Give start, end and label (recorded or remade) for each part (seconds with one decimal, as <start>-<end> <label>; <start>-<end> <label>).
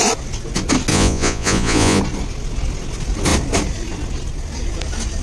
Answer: 0.0-0.9 recorded; 0.9-2.0 remade; 2.0-5.2 recorded